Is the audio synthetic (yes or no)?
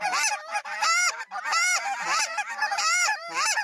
yes